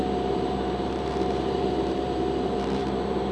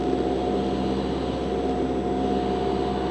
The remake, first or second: first